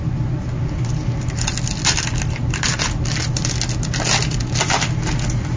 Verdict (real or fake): real